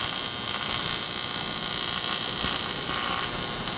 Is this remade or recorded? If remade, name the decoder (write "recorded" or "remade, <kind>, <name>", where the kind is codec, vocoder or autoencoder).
recorded